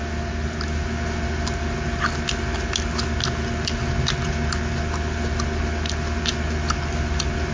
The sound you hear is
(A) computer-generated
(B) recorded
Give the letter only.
B